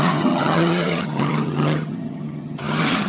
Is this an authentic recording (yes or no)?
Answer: no